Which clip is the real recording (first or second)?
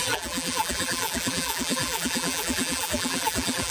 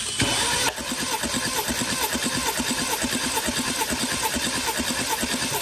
second